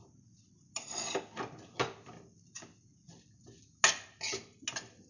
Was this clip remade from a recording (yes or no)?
no